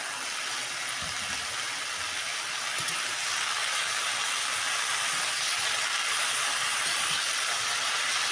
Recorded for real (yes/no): yes